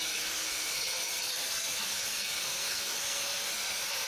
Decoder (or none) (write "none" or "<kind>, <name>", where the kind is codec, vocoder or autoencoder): codec, SNAC